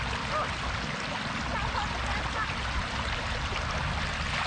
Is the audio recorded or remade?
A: recorded